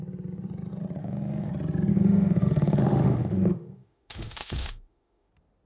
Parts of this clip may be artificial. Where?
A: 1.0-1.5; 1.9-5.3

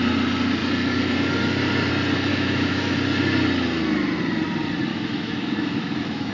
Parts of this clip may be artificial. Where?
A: 2.3-2.9; 4.9-6.3

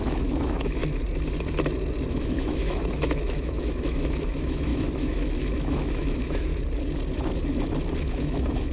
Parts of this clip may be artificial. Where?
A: 0.0-0.8; 2.1-6.5; 8.0-8.7